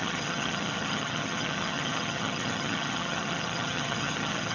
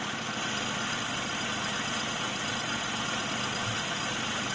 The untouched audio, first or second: second